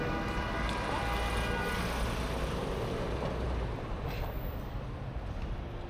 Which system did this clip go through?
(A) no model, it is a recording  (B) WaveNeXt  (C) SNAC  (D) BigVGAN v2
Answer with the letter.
A